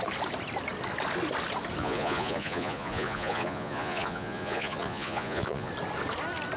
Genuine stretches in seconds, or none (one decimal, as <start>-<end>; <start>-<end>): 0.0-1.8; 5.7-6.6